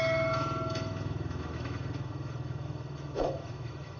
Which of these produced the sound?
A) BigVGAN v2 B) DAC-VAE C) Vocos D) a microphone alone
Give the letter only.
B